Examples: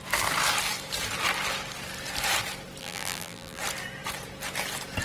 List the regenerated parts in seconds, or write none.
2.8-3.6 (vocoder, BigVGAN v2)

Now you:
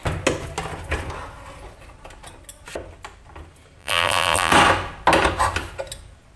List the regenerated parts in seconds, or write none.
3.8-4.5 (vocoder, BigVGAN v2)